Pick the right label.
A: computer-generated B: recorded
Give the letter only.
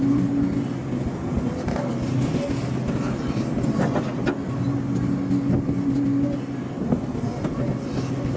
B